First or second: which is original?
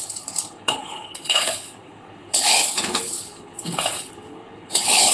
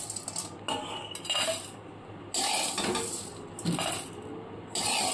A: second